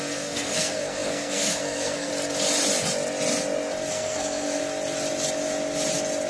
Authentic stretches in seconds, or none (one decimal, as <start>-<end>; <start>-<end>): 2.1-3.9; 4.6-6.3